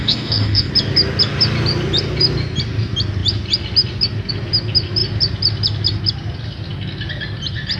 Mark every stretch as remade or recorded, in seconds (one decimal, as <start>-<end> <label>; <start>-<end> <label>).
0.0-0.7 remade; 0.7-7.8 recorded